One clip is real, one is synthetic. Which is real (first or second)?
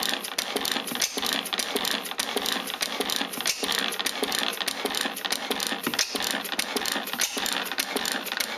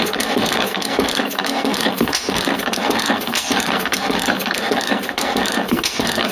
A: first